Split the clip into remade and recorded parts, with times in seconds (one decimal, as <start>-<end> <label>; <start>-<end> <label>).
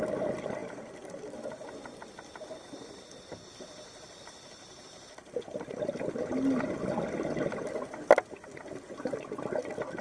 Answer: 0.0-10.0 recorded